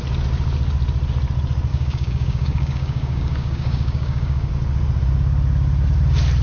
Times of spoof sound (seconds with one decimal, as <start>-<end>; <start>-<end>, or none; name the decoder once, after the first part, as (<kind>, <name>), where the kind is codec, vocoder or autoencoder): 1.7-4.5 (codec, DAC)